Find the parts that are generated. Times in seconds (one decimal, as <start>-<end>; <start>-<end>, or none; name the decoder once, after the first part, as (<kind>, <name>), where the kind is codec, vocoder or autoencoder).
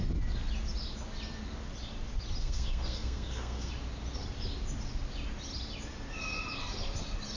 2.4-3.7 (codec, SNAC)